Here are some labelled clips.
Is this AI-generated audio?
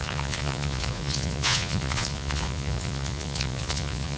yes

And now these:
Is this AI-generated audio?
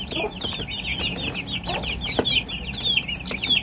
no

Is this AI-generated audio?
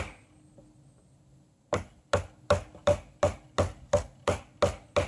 no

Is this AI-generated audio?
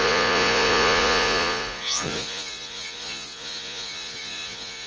yes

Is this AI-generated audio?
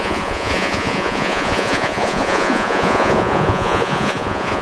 yes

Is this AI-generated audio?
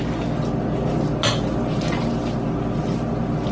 no